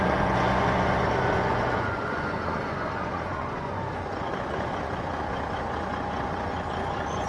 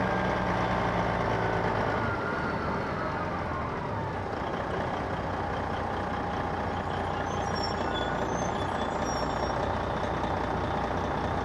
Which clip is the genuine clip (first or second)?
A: second